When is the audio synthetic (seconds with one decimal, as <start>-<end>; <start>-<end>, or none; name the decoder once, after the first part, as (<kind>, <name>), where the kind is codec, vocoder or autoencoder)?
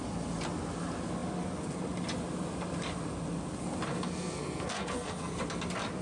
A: 3.9-5.3 (codec, SNAC)